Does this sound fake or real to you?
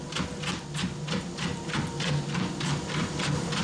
real